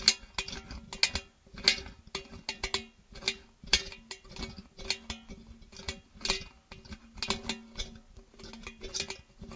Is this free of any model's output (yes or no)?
yes